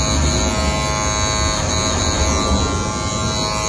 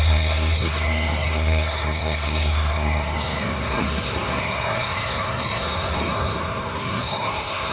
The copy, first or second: second